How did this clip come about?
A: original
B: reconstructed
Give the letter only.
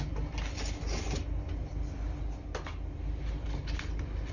A